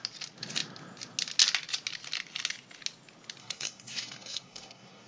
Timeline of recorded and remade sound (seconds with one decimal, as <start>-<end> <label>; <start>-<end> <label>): 0.0-3.4 recorded; 3.4-5.1 remade